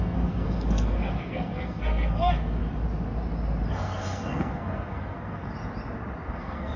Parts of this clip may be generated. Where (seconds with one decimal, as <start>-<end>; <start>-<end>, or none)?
0.0-2.6; 3.7-5.5; 6.3-6.8